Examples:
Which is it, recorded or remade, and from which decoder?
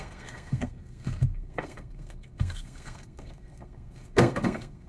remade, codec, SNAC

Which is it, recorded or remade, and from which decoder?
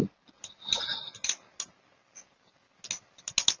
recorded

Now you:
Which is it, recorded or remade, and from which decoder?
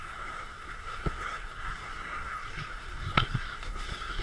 remade, codec, SNAC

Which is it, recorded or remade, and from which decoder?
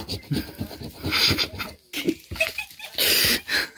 recorded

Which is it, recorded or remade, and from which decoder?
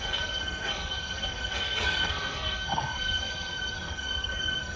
remade, codec, SNAC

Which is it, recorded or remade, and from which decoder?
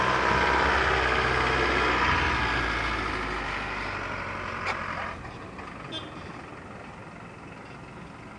recorded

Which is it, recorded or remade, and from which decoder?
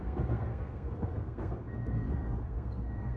remade, codec, SNAC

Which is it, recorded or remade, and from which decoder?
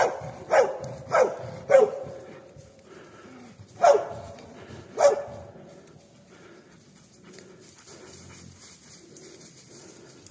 recorded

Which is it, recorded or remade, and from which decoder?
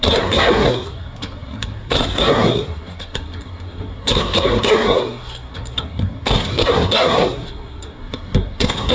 remade, codec, SNAC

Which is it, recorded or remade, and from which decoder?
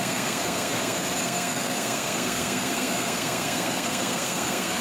remade, codec, SNAC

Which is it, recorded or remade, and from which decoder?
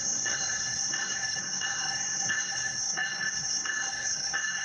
remade, codec, SNAC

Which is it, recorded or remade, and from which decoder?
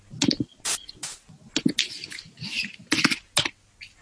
recorded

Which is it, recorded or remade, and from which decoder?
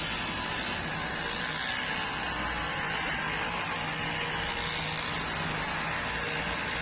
recorded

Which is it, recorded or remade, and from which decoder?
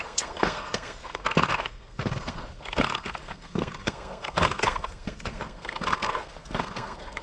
remade, codec, SNAC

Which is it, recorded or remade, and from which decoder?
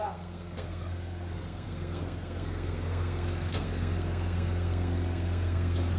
remade, codec, SNAC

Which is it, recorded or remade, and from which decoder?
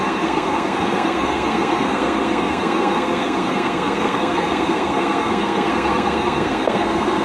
remade, codec, SNAC